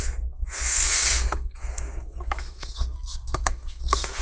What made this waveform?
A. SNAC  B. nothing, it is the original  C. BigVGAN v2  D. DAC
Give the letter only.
A